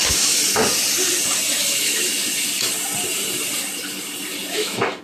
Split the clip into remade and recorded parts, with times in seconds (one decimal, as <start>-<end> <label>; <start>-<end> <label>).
0.0-0.6 remade; 0.6-1.6 recorded; 1.6-2.1 remade; 2.1-4.5 recorded; 4.5-5.0 remade